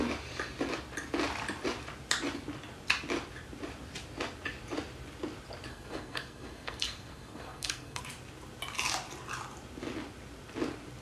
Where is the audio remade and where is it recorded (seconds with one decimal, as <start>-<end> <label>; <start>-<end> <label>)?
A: 0.0-5.7 recorded; 5.7-8.0 remade; 8.0-11.0 recorded